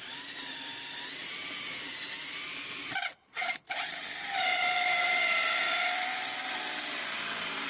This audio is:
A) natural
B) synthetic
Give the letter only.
B